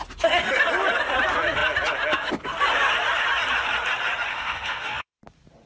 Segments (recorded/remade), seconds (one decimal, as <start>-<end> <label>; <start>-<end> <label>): 0.0-4.3 recorded; 4.3-5.2 remade; 5.2-5.7 recorded